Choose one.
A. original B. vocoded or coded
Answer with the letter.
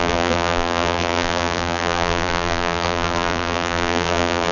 B